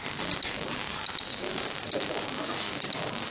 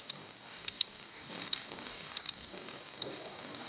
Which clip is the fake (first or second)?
second